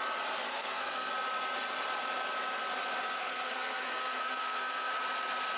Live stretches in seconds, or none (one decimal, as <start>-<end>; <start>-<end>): 0.0-0.5; 1.1-3.2; 4.9-5.6